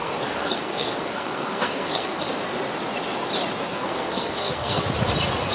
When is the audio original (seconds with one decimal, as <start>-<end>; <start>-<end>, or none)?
2.2-3.7; 4.8-5.5